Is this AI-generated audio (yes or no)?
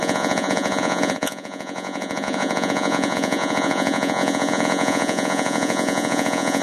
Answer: yes